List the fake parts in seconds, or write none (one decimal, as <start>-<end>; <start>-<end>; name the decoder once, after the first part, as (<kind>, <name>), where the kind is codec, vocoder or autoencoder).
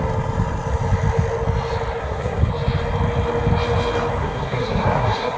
2.0-2.5 (codec, SNAC); 4.2-5.4